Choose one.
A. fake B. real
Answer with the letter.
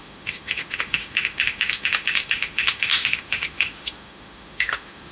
A